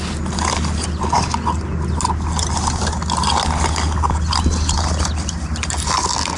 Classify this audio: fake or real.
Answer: real